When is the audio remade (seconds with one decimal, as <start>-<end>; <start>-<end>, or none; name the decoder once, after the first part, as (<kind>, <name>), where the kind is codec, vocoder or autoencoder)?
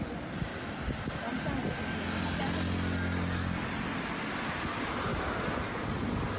none